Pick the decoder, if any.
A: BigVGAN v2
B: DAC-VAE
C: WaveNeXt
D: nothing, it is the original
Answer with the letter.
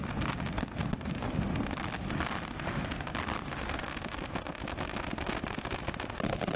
D